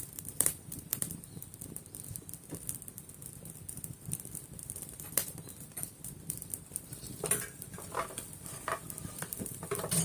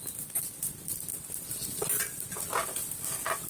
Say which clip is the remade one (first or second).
first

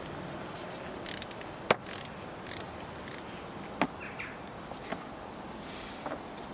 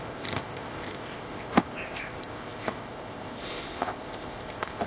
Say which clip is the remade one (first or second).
second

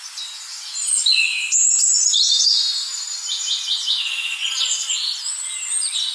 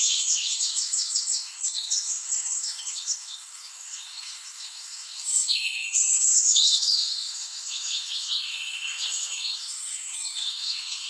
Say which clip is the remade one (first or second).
second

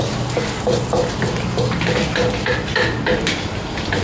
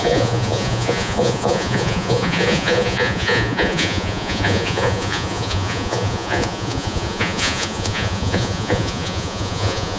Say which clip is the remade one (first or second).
second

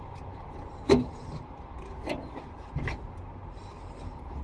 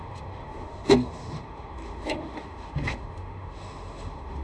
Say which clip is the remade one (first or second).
second